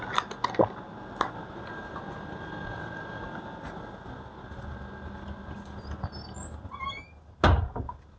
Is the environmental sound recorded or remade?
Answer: recorded